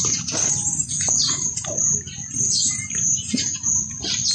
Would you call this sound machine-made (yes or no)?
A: no